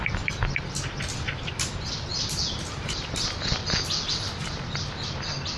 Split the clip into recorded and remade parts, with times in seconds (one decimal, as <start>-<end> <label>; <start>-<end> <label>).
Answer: 0.0-5.6 recorded